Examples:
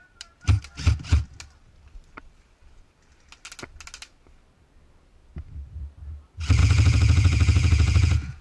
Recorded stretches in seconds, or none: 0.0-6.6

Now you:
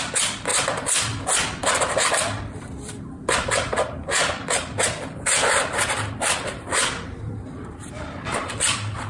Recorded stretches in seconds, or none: none

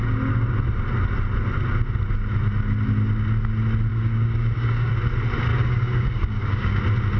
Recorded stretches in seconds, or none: 0.0-3.9; 4.9-5.5; 6.8-7.2

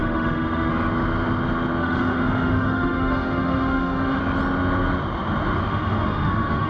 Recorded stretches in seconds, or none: 0.7-1.8; 4.2-5.7

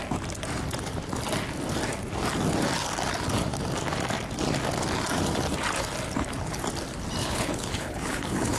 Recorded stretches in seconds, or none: 0.0-7.2

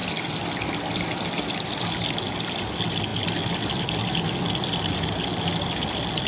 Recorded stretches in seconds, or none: 0.0-6.3

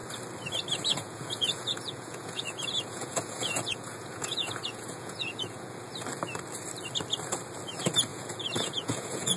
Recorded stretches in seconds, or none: 0.0-0.9; 5.9-8.1

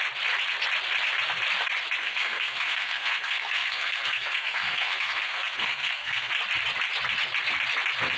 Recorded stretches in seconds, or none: 0.0-2.0; 6.3-8.2